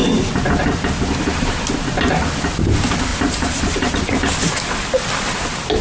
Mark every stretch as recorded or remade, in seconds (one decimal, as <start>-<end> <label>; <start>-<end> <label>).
0.0-3.1 recorded; 3.1-4.1 remade; 4.1-5.8 recorded